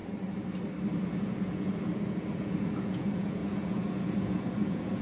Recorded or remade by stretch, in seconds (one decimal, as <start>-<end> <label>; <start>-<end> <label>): 0.0-1.0 recorded; 1.0-5.0 remade